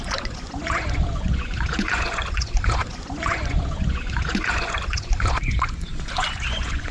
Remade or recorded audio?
remade